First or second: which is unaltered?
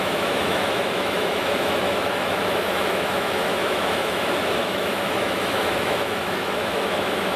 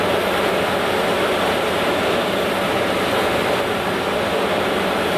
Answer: second